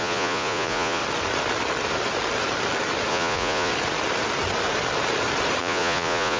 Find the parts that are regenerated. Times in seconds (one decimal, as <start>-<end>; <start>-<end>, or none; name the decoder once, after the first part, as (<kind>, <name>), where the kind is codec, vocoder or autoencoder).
0.0-1.0 (vocoder, Vocos); 3.1-3.7; 5.6-6.4